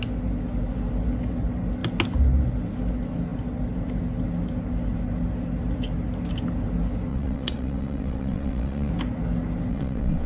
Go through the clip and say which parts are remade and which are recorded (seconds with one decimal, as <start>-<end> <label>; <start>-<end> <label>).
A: 0.0-7.1 recorded; 7.1-8.9 remade; 8.9-9.7 recorded; 9.7-10.3 remade